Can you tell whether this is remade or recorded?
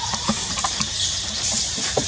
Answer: recorded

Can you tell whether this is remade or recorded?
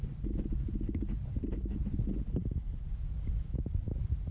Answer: recorded